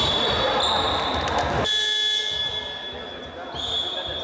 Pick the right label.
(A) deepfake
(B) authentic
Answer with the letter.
B